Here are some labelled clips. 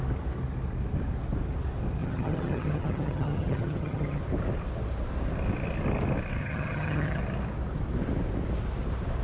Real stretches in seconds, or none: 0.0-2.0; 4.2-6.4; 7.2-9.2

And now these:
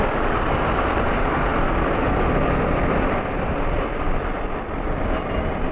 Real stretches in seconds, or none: 0.0-5.7

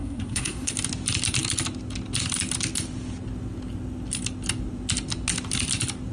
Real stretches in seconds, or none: 0.7-6.1

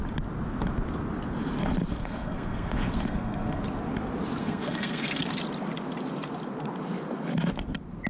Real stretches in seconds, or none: 0.0-1.9; 3.6-4.4; 5.4-8.1